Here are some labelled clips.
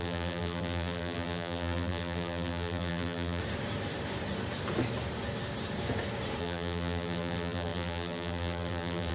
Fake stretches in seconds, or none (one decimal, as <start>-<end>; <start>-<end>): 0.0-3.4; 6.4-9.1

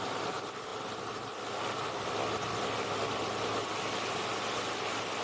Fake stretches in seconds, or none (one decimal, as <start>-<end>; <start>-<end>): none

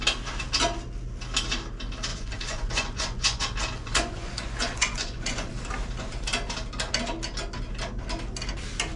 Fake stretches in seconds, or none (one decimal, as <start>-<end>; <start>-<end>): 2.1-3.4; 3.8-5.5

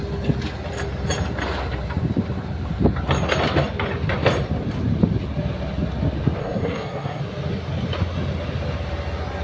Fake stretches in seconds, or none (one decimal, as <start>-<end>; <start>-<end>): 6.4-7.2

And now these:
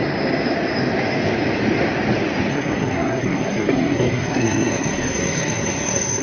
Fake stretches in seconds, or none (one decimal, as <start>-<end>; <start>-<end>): 2.5-6.2

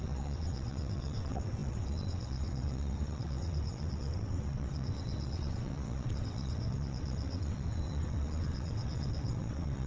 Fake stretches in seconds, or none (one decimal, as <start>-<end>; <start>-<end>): 0.0-9.9